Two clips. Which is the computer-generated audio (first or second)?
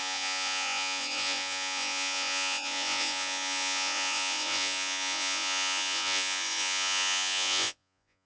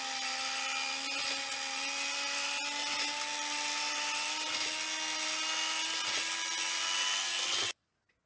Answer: first